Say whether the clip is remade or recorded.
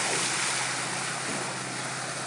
recorded